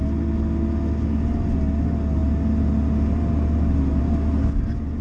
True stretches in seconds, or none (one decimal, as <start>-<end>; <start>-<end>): 0.0-5.0